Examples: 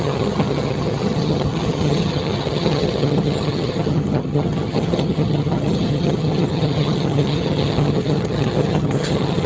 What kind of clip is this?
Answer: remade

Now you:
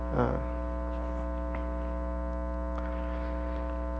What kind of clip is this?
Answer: recorded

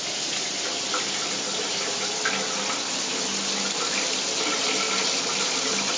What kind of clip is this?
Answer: recorded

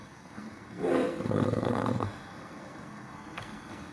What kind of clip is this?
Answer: remade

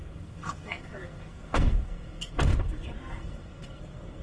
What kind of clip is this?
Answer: remade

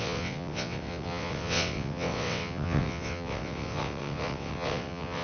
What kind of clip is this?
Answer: remade